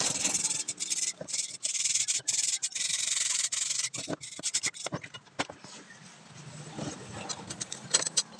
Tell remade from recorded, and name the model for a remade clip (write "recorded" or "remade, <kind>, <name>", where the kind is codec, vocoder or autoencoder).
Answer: recorded